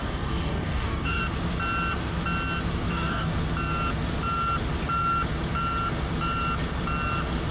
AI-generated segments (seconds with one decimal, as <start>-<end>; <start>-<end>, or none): 0.0-1.2; 2.9-3.3